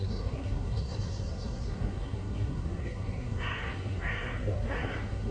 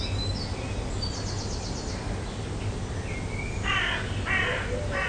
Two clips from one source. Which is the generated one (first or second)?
first